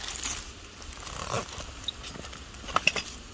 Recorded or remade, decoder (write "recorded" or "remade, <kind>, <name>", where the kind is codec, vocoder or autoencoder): recorded